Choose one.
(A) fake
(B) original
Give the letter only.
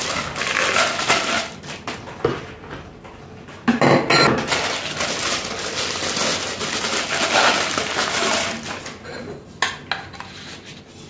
B